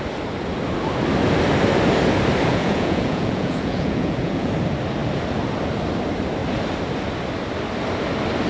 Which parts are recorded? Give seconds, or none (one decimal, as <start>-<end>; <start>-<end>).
0.0-2.5; 4.5-8.5